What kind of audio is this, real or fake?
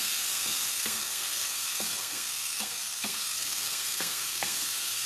fake